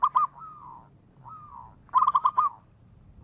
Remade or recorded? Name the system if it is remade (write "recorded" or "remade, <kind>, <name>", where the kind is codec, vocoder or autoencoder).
recorded